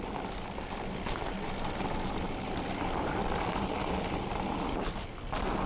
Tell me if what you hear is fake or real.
real